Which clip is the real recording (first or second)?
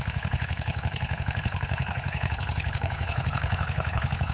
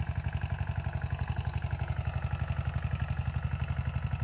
second